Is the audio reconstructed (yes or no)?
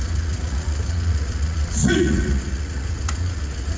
yes